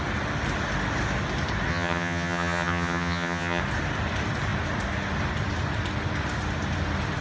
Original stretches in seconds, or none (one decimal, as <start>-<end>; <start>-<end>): 0.0-1.7; 3.6-7.2